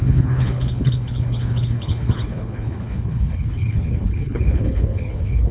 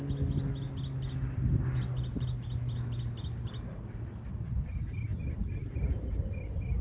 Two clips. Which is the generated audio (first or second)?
first